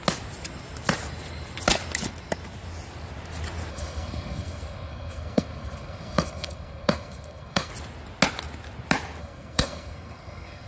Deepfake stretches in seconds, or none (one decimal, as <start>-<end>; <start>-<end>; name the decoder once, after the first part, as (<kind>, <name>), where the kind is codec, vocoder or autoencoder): 3.7-7.7 (codec, SNAC); 9.2-10.7